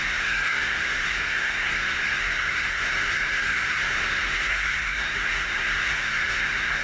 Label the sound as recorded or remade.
remade